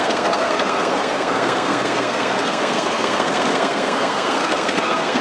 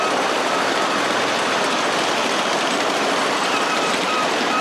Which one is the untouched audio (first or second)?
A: second